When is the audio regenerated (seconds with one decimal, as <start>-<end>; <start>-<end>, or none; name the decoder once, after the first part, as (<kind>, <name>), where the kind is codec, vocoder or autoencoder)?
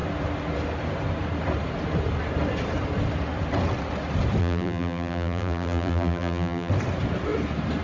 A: 4.4-6.7 (vocoder, BigVGAN v2)